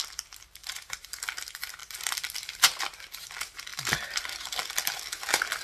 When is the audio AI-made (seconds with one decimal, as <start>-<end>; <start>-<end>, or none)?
0.6-1.2